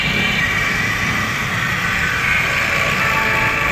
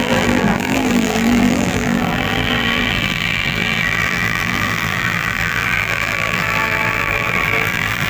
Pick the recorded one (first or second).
first